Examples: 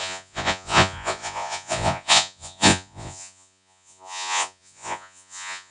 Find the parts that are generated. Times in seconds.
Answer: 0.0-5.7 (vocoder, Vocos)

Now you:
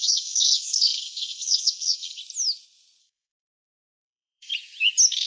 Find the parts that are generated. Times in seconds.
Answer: 0.0-2.2 (codec, SNAC); 3.0-4.5

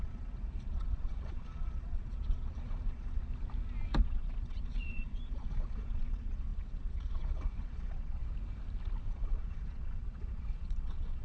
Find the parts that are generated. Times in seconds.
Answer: 0.0-3.3 (vocoder, Vocos); 4.0-8.2; 9.1-11.2

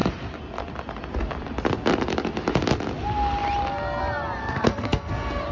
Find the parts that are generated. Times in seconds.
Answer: 4.4-5.1 (codec, SNAC)

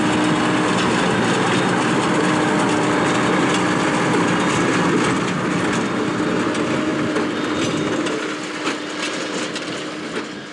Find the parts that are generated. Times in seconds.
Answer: none

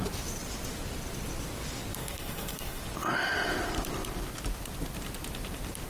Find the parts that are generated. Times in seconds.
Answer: 2.0-2.8 (codec, SNAC)

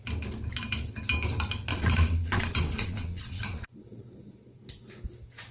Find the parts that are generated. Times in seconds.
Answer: 1.7-5.0 (vocoder, Vocos)